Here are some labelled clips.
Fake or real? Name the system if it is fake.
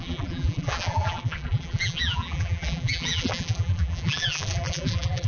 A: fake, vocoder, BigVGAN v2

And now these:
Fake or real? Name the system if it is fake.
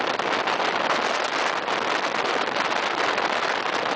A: real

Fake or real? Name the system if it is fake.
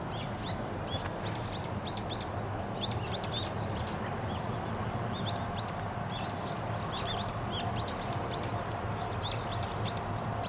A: real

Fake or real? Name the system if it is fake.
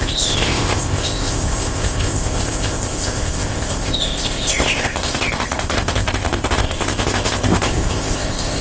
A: fake, codec, ZipCodec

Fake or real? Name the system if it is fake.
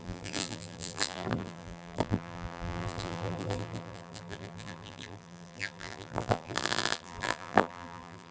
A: fake, vocoder, BigVGAN v2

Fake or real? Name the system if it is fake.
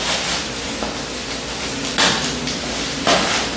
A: real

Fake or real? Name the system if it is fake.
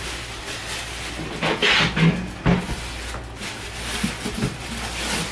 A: real